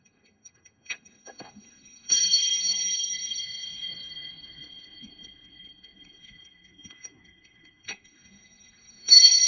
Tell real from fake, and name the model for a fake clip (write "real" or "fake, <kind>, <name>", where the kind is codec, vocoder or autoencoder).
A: fake, codec, SNAC